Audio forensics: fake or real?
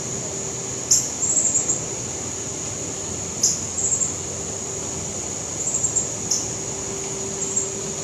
real